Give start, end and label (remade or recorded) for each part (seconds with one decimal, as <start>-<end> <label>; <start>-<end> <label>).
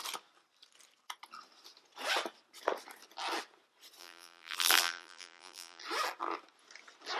0.0-4.0 recorded; 4.0-5.8 remade; 5.8-7.2 recorded